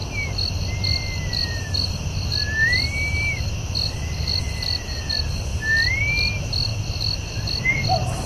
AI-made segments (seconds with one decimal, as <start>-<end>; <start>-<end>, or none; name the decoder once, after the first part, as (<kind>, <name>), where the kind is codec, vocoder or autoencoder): none